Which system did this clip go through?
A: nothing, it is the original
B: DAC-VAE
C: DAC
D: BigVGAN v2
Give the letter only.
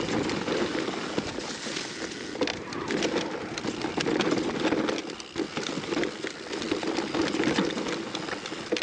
A